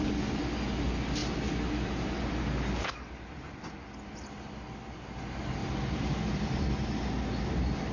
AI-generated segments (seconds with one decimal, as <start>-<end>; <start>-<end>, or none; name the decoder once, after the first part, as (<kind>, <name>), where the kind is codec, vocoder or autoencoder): 5.6-7.1 (vocoder, BigVGAN v2)